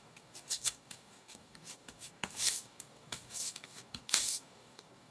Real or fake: fake